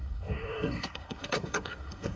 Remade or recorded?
remade